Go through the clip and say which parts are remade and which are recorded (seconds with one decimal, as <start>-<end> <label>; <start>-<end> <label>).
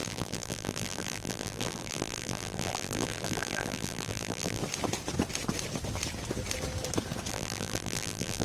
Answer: 0.0-4.6 remade; 4.6-7.3 recorded; 7.3-8.4 remade